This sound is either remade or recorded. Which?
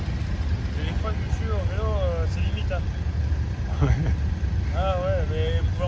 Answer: recorded